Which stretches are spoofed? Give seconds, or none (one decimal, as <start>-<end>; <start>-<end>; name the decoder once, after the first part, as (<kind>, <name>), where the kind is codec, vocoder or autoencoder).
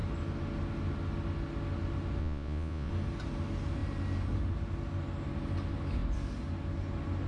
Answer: 2.2-2.9 (vocoder, Vocos)